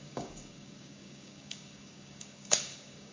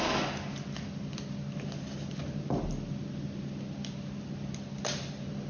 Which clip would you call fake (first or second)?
first